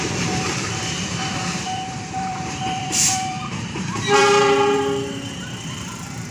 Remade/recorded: remade